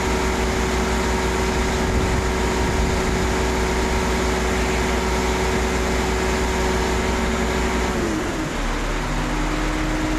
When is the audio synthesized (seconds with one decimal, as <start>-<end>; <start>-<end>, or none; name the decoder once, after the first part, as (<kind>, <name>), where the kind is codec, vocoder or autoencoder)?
none